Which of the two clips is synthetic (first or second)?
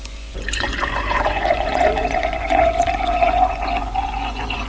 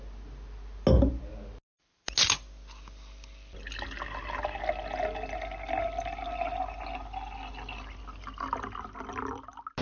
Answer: first